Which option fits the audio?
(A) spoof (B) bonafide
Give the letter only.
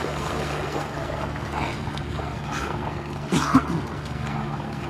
A